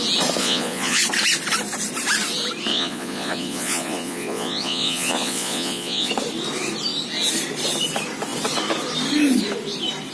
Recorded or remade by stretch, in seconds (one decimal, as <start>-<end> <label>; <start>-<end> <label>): 0.0-0.4 recorded; 0.4-1.0 remade; 1.0-2.7 recorded; 2.7-6.1 remade; 6.1-10.1 recorded